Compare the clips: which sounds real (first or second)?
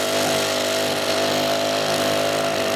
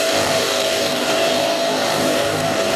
first